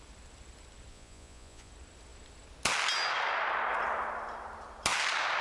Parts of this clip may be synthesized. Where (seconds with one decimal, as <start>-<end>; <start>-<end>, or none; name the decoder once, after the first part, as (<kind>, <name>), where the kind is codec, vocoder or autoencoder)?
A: 0.9-1.7 (vocoder, Vocos)